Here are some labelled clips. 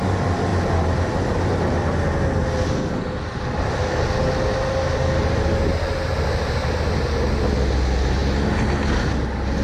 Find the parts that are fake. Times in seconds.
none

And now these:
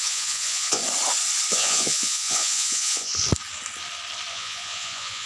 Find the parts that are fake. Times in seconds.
0.0-0.8; 1.5-3.1; 4.3-5.3

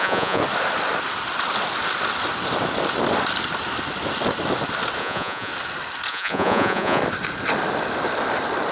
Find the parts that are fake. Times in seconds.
0.0-0.4; 5.0-5.5; 6.1-7.0